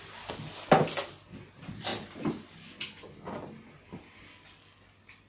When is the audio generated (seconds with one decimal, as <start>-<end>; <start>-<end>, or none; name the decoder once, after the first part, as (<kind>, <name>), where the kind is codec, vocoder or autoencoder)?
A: none